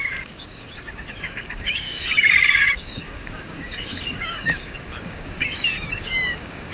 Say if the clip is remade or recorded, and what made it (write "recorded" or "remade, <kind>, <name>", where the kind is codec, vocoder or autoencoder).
remade, codec, DAC